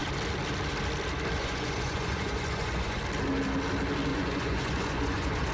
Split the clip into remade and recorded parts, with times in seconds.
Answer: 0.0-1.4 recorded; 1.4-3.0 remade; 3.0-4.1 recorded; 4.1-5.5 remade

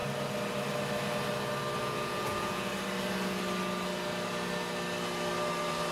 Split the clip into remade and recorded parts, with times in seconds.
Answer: 0.0-1.8 recorded; 1.8-2.7 remade; 2.7-5.9 recorded

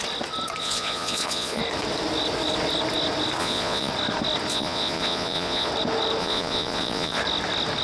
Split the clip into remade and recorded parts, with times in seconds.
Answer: 0.0-0.6 recorded; 0.6-1.6 remade; 1.6-3.4 recorded; 3.4-3.9 remade; 3.9-4.5 recorded; 4.5-5.7 remade; 5.7-6.2 recorded; 6.2-7.2 remade; 7.2-7.8 recorded

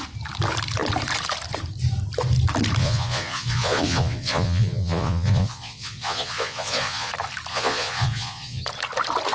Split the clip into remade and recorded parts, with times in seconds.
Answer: 0.0-2.8 recorded; 2.8-7.1 remade; 7.1-7.5 recorded; 7.5-8.6 remade; 8.6-9.3 recorded